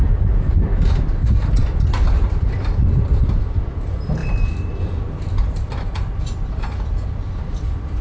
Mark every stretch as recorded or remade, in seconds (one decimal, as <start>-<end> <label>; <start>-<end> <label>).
0.0-8.0 remade